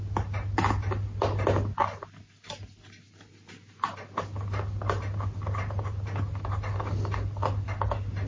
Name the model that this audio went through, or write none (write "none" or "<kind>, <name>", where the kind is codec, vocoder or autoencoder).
none